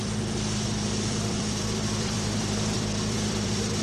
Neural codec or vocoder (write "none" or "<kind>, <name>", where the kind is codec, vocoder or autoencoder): vocoder, BigVGAN v2